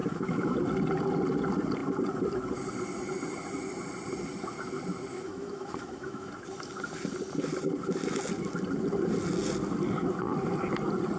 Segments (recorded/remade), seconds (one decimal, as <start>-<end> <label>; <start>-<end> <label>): 0.0-0.6 remade; 0.6-5.1 recorded; 5.1-6.3 remade; 6.3-11.2 recorded